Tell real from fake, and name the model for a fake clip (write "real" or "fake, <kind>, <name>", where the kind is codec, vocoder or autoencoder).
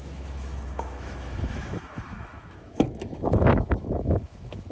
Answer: fake, autoencoder, DAC-VAE